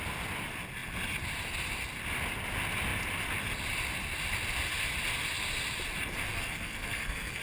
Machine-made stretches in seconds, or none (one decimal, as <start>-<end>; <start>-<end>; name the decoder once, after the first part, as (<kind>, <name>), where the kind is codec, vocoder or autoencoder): 6.3-7.4 (codec, SNAC)